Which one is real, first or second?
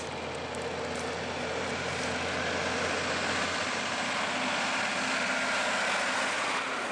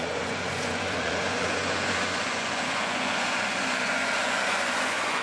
first